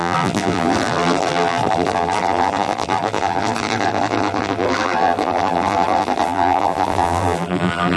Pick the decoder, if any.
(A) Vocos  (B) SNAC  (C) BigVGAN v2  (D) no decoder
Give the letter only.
C